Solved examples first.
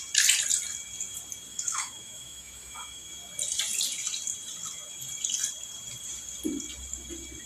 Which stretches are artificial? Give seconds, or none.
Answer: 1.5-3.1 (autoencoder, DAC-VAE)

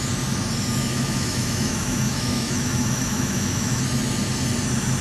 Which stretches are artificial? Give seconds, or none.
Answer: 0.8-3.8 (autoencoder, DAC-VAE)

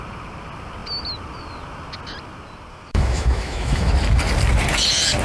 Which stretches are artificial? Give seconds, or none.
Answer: 2.7-3.9 (autoencoder, DAC-VAE)

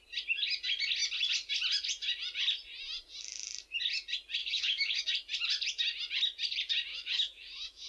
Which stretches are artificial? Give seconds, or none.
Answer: 4.4-5.0 (autoencoder, DAC-VAE); 6.9-7.9

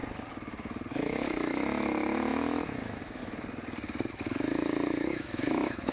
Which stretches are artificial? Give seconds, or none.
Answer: 0.9-3.2 (autoencoder, DAC-VAE); 4.1-5.9

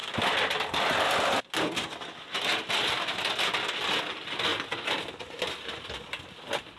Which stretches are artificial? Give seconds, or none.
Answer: none